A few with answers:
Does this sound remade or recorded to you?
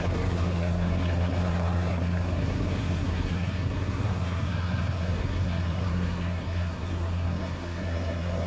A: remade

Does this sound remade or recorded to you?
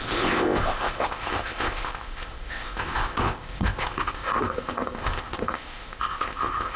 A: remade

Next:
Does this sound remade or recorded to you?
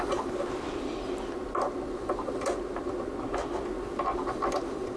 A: recorded